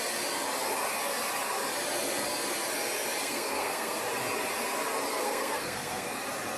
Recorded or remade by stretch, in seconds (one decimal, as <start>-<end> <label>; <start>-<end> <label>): 0.0-3.2 recorded; 3.2-4.0 remade; 4.0-5.1 recorded; 5.1-6.1 remade; 6.1-6.6 recorded